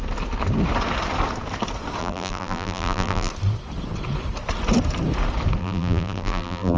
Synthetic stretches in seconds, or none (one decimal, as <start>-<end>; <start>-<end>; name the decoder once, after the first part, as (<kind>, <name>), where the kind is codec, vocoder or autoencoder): 2.0-3.3 (vocoder, BigVGAN v2); 5.6-6.8